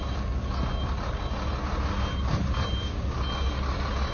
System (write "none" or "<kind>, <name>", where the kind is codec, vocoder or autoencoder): none